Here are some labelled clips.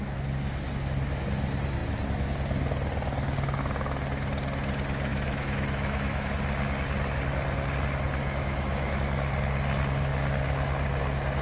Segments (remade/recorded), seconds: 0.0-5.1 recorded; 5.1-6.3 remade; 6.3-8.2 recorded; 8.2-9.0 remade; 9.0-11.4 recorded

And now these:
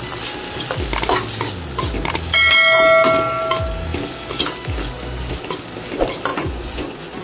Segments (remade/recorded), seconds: 0.0-6.3 recorded; 6.3-7.2 remade